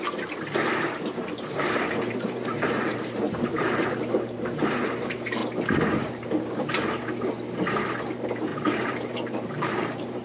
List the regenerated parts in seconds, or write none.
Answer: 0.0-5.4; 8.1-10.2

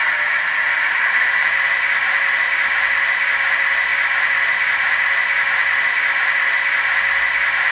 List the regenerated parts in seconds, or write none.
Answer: none